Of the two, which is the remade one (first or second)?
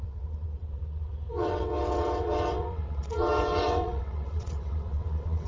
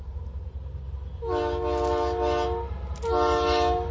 first